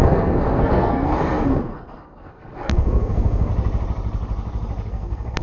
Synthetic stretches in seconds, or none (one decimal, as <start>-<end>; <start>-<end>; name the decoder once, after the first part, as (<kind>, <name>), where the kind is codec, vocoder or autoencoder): 0.0-3.5 (codec, SNAC); 4.9-5.4